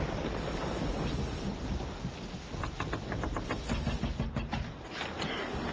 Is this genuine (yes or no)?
yes